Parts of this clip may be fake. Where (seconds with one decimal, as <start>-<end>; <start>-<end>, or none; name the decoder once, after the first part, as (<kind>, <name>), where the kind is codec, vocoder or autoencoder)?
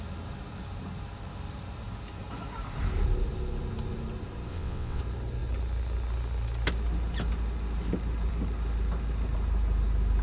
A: 4.5-5.0 (vocoder, WaveNeXt)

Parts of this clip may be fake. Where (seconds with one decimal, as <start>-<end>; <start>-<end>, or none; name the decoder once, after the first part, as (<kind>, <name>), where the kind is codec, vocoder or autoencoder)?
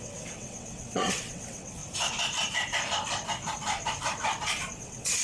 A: 0.0-1.8 (vocoder, WaveNeXt); 4.8-5.2